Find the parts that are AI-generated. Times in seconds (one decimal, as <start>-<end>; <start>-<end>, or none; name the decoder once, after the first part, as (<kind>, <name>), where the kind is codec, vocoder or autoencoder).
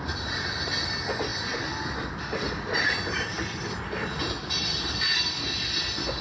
none